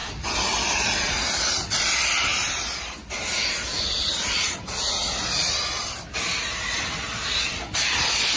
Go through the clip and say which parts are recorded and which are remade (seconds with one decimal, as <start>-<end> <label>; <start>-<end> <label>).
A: 0.0-8.4 recorded